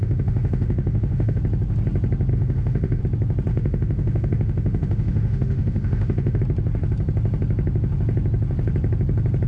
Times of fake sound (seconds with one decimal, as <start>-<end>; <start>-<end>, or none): 0.0-1.4; 2.3-3.0; 3.5-6.4